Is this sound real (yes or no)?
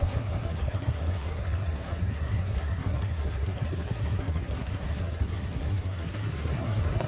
no